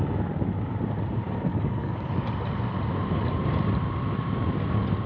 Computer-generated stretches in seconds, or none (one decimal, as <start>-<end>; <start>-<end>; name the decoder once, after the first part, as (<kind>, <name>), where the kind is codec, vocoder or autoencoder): 1.5-2.3 (codec, DAC)